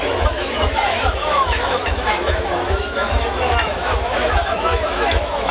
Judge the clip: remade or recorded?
remade